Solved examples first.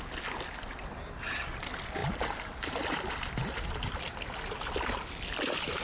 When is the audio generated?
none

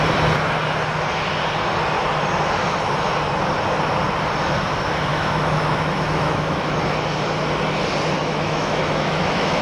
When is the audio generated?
5.1-6.8 (autoencoder, DAC-VAE); 8.2-9.6

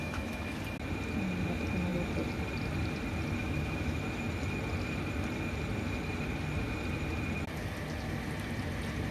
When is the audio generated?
0.0-0.6 (autoencoder, DAC-VAE); 3.4-4.0

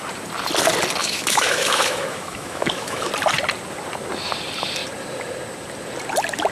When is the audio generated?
1.0-3.1 (autoencoder, DAC-VAE)

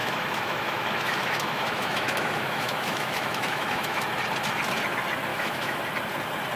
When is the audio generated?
0.0-4.0 (autoencoder, DAC-VAE); 5.3-5.8

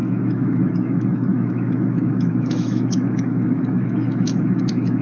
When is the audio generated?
0.0-5.0 (autoencoder, DAC-VAE)